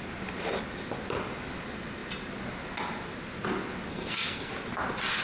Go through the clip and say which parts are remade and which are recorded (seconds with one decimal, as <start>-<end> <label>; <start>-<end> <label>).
0.0-3.9 recorded; 3.9-4.5 remade; 4.5-5.2 recorded